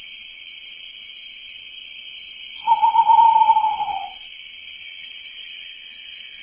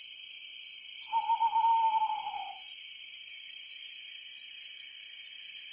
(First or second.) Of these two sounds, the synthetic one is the first